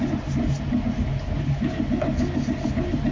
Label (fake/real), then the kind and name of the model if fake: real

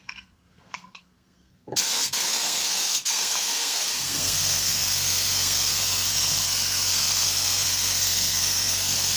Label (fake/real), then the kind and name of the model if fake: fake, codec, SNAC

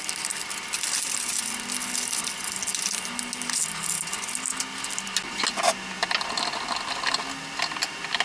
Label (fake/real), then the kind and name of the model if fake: real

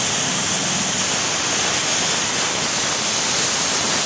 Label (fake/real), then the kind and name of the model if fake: real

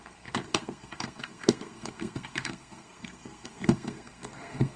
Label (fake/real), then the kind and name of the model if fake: fake, codec, SNAC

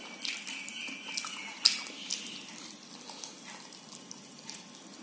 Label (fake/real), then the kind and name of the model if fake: real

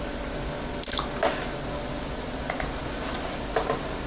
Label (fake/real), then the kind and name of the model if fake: real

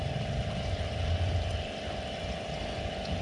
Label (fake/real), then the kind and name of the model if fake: real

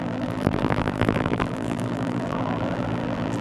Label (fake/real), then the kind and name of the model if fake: fake, vocoder, BigVGAN v2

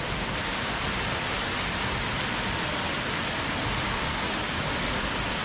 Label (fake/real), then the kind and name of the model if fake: fake, vocoder, BigVGAN v2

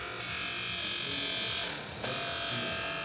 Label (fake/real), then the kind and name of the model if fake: real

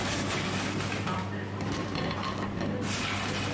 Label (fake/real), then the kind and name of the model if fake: real